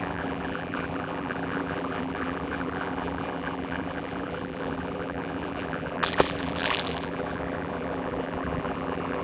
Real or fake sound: fake